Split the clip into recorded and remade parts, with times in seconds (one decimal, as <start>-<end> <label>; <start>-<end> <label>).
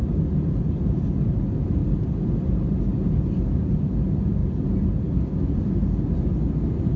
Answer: 0.0-7.0 recorded